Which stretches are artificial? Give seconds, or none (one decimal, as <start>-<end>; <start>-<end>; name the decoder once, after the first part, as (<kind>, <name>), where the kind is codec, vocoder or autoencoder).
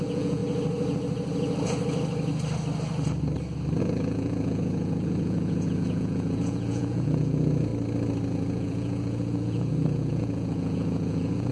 0.0-0.4 (vocoder, Vocos); 3.8-7.7; 8.3-11.5